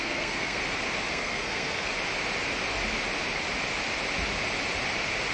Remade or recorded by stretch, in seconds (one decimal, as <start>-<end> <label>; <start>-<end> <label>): 0.0-0.6 remade; 0.6-1.1 recorded; 1.1-1.9 remade; 1.9-5.3 recorded